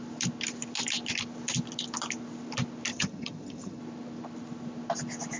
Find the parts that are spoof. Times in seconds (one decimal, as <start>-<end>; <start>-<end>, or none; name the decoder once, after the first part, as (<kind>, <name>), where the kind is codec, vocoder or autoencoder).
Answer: 2.9-3.8 (vocoder, HiFi-GAN)